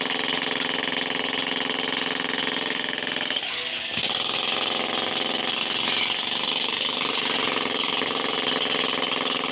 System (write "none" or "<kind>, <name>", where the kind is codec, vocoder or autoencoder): vocoder, BigVGAN v2